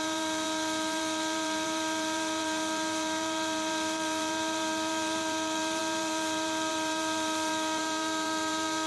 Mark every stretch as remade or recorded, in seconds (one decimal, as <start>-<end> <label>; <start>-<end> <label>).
0.0-8.9 remade